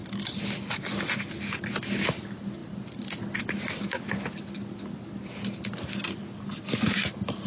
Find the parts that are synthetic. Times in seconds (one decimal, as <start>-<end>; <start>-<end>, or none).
none